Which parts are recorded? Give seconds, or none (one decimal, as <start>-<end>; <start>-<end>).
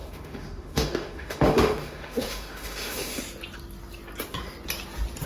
3.2-5.3